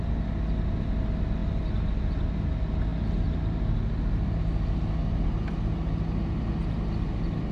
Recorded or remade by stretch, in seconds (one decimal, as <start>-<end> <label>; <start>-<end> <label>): 0.0-7.5 recorded